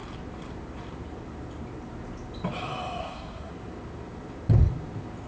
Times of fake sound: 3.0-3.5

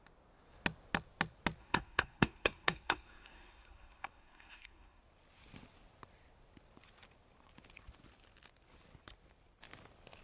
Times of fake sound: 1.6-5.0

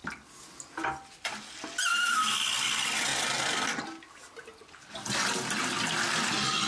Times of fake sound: none

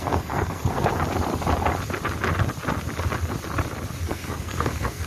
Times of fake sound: 0.0-0.9; 4.0-5.1

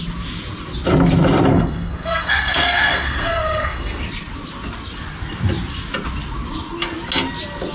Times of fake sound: 1.5-4.0

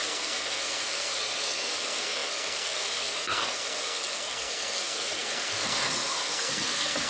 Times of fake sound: 0.0-7.1

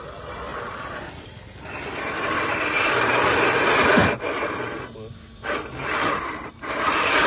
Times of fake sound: none